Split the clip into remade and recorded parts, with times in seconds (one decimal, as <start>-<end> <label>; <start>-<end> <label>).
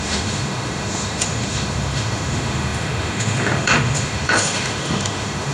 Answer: 0.0-5.5 remade